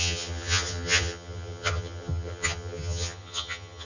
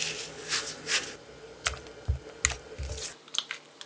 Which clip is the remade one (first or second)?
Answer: first